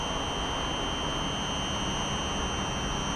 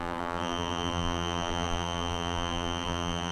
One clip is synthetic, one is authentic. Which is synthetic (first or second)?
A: second